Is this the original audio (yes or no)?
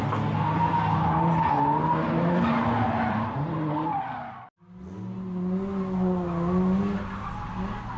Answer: yes